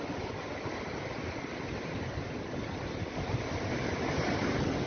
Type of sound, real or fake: real